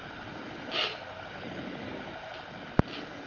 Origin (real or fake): real